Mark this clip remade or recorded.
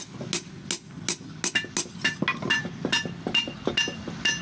recorded